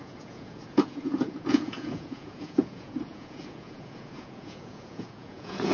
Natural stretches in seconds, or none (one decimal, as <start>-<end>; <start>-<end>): none